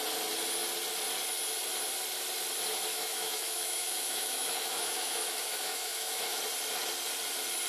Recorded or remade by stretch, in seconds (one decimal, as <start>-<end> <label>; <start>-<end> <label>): 0.0-2.9 recorded; 2.9-6.4 remade; 6.4-7.7 recorded